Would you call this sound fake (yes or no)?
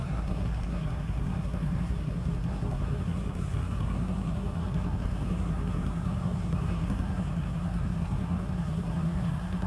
yes